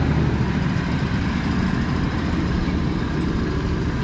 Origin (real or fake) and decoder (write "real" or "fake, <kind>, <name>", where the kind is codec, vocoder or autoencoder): real